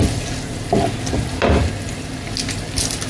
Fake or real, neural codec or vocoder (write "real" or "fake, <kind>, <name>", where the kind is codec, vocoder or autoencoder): real